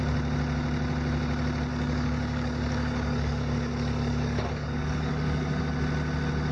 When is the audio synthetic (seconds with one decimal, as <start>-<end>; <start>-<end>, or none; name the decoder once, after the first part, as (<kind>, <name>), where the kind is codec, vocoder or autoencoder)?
1.7-5.6 (codec, DAC)